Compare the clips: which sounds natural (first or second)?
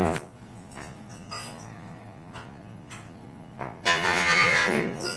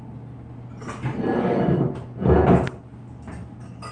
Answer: second